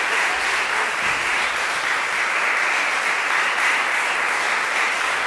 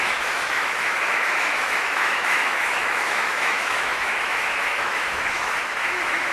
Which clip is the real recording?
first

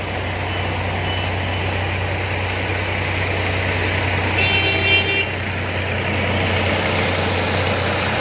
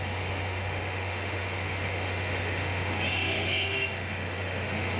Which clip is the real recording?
first